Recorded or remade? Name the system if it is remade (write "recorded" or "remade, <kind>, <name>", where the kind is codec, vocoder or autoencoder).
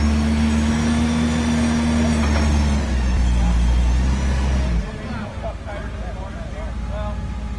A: recorded